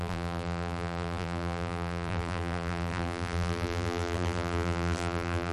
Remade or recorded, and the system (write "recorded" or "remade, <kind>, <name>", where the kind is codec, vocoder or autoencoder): remade, vocoder, BigVGAN v2